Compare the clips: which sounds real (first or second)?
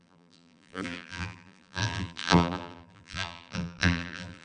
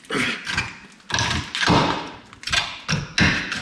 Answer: second